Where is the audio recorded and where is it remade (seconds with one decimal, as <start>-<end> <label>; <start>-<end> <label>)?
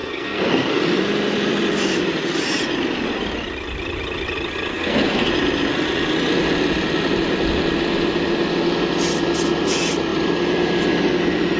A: 0.0-0.8 remade; 0.8-4.7 recorded; 4.7-5.3 remade; 5.3-11.6 recorded